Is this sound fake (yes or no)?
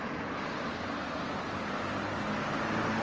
no